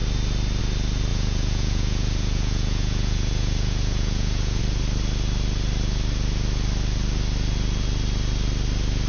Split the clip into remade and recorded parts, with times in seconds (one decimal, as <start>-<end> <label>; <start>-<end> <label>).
0.0-1.1 recorded; 1.1-4.6 remade; 4.6-9.1 recorded